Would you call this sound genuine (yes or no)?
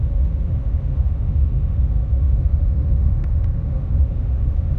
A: no